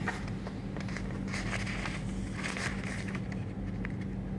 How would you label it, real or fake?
real